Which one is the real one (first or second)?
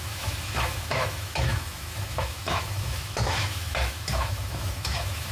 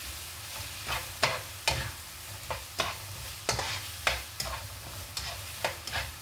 second